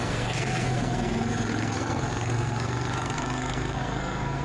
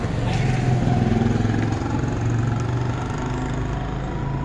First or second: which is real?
second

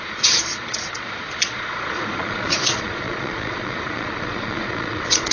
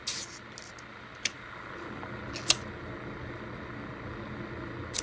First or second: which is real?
second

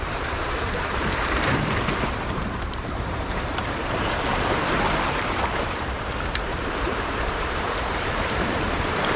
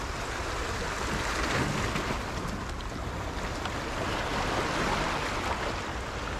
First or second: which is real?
second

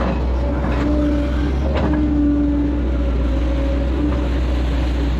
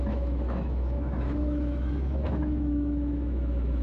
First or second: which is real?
first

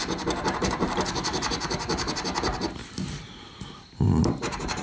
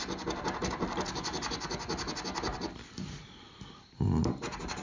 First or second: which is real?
second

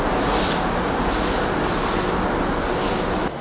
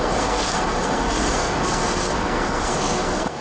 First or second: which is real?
first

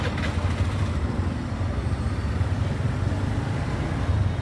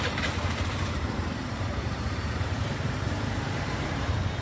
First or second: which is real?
first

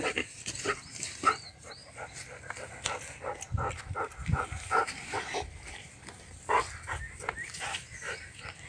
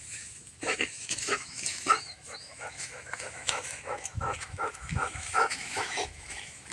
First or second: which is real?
first